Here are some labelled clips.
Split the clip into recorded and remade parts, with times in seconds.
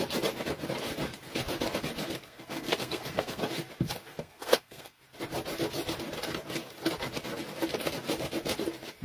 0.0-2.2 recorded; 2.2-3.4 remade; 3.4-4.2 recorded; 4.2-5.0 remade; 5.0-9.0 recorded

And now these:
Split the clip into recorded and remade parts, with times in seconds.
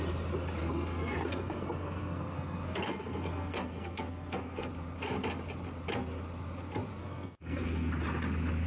0.0-0.6 recorded; 0.6-4.7 remade; 4.7-7.0 recorded; 7.0-7.9 remade; 7.9-8.7 recorded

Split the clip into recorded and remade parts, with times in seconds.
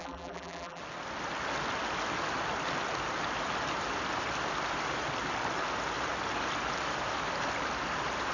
0.0-0.8 remade; 0.8-8.3 recorded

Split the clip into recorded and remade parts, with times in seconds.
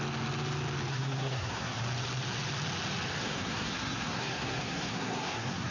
0.0-0.9 recorded; 0.9-1.8 remade; 1.8-3.2 recorded; 3.2-5.7 remade